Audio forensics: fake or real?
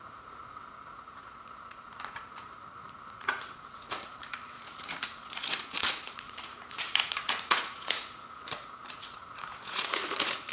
fake